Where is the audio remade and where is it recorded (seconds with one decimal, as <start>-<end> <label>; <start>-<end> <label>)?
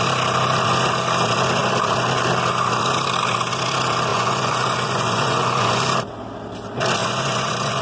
0.0-4.1 recorded; 4.1-5.8 remade; 5.8-7.0 recorded; 7.0-7.8 remade